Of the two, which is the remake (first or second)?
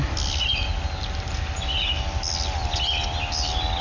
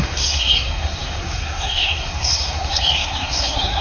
second